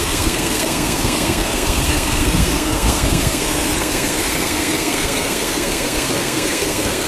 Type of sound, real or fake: fake